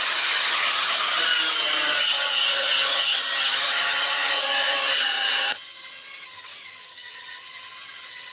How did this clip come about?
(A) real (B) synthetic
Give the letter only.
B